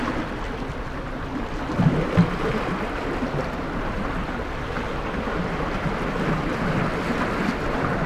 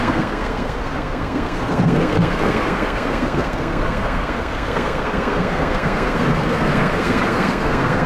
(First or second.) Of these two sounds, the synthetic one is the second